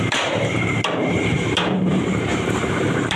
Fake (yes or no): yes